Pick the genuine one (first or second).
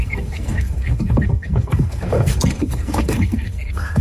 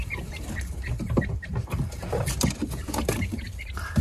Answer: second